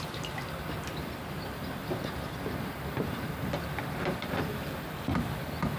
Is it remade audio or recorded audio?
recorded